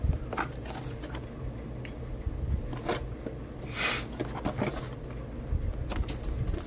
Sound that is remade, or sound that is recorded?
recorded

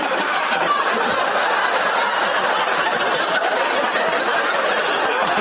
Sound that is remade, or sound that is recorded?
recorded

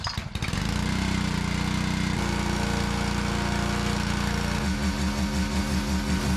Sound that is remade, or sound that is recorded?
recorded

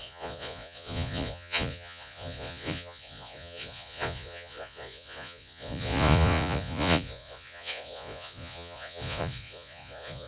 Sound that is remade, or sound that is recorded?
remade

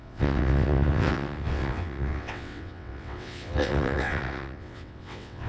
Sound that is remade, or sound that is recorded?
remade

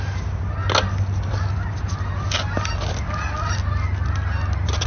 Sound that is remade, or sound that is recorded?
recorded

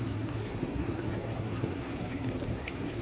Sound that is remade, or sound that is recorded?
remade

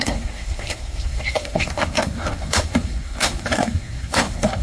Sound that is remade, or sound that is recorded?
remade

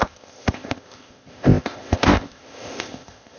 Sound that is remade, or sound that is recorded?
remade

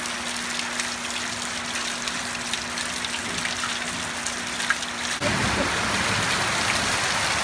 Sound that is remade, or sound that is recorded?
recorded